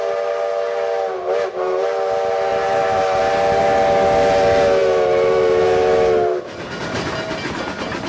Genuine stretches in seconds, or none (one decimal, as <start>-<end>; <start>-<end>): 0.0-8.1